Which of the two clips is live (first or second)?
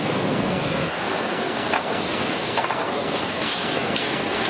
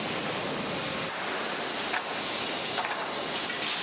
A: second